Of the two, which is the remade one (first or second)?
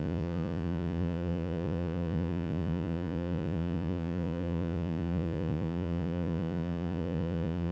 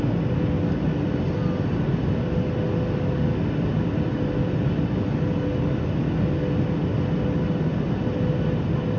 first